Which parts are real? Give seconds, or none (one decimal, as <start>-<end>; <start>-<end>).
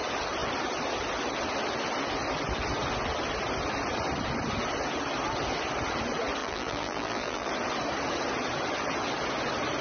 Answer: 0.0-6.4; 7.5-9.8